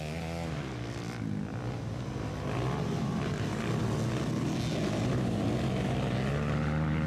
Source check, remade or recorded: recorded